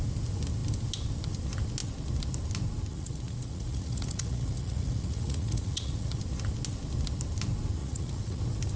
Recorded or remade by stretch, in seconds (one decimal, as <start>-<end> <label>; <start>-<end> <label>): 0.0-2.9 recorded; 2.9-6.2 remade; 6.2-7.8 recorded; 7.8-8.4 remade; 8.4-8.8 recorded